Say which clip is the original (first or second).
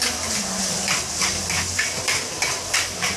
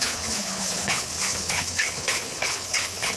first